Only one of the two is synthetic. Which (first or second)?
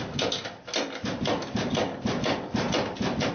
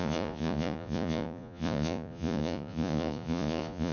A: second